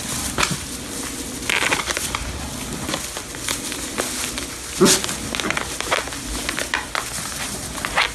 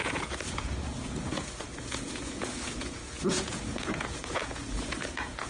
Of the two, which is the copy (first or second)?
second